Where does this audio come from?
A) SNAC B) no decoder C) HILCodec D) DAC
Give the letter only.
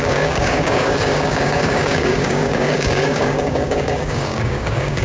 D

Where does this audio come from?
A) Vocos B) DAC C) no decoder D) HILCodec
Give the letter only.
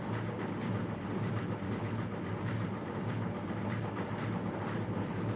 C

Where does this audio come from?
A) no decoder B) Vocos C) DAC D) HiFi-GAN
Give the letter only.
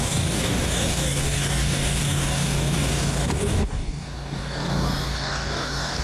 C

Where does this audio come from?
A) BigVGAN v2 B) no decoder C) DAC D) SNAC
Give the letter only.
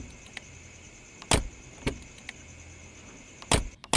B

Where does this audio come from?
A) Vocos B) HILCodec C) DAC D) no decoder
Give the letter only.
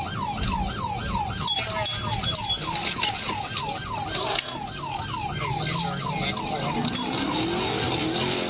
D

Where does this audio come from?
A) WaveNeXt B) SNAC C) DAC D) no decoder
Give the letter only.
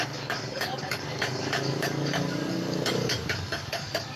C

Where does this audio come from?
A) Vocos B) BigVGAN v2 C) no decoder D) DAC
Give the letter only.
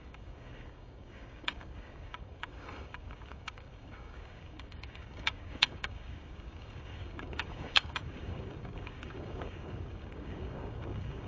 D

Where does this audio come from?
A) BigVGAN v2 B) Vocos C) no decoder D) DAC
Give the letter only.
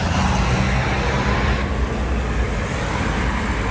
C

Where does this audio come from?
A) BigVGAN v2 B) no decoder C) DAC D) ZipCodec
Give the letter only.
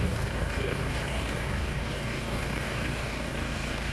C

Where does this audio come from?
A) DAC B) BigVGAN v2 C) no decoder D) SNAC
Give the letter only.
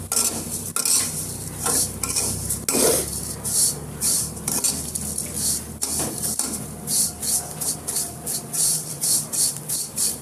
C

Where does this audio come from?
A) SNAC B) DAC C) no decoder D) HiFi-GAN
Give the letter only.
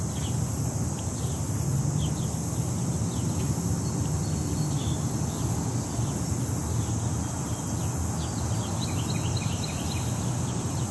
C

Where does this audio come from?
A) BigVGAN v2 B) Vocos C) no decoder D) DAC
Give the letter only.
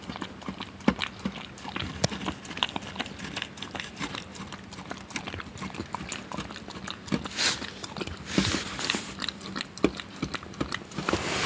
C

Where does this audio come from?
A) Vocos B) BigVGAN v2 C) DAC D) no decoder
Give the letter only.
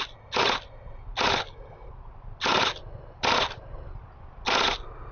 D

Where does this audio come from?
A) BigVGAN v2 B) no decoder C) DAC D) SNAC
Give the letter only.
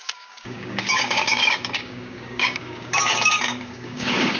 C